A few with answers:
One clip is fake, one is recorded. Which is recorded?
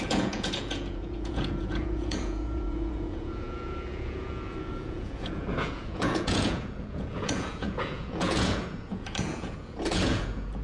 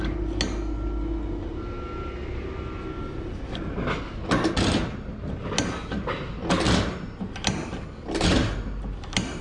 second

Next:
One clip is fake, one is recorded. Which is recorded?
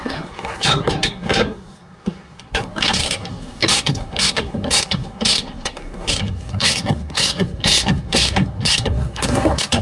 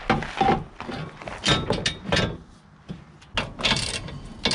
second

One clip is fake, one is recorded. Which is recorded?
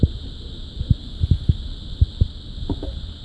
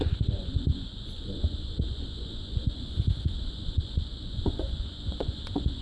first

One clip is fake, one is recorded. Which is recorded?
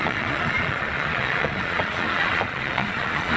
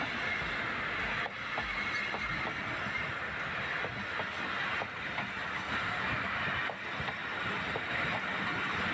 second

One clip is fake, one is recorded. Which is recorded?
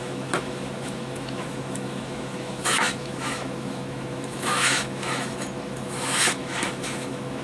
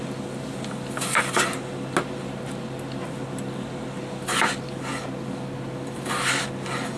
second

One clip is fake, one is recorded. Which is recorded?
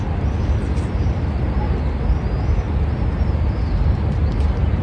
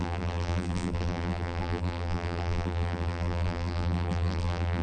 first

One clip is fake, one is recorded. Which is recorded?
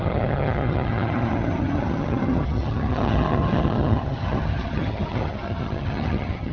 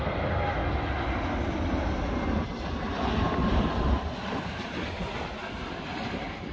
second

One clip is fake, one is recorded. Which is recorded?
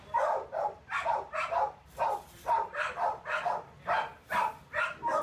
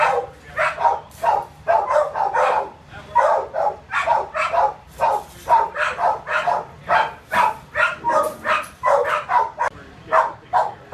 second